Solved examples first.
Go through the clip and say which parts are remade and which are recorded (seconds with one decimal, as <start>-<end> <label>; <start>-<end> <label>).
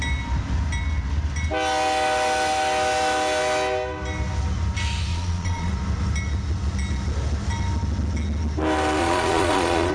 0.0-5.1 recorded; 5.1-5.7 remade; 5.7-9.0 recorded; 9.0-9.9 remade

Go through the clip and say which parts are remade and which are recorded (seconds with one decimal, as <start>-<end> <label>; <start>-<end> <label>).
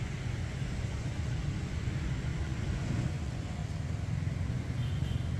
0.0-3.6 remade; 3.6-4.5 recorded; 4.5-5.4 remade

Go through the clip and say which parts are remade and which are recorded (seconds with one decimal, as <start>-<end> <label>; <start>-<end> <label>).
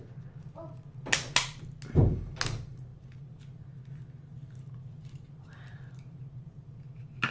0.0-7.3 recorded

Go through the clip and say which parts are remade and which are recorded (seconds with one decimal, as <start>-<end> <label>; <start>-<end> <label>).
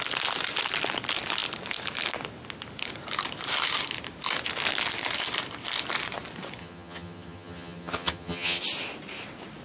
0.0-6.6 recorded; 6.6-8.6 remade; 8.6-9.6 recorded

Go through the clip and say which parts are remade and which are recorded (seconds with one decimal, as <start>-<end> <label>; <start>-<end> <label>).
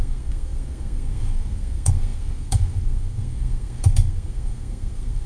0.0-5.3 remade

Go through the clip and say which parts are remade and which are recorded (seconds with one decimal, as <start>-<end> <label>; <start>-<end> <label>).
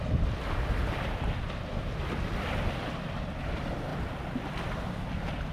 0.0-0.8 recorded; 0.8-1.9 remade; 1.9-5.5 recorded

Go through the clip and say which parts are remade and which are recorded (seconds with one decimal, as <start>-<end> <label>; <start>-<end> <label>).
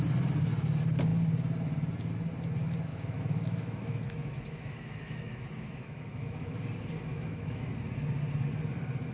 0.0-2.9 recorded; 2.9-6.6 remade; 6.6-7.1 recorded; 7.1-7.7 remade; 7.7-9.1 recorded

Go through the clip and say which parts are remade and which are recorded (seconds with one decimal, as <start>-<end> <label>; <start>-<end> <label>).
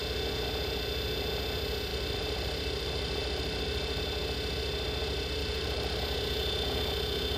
0.0-1.9 recorded; 1.9-4.0 remade; 4.0-5.4 recorded; 5.4-6.0 remade; 6.0-7.4 recorded